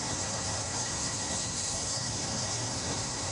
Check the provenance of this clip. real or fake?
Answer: fake